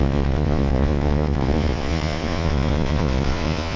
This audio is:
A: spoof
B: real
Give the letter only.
A